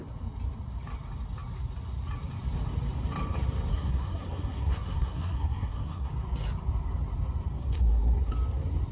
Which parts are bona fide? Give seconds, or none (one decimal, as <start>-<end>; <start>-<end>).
0.0-3.7; 6.1-7.6; 8.3-8.9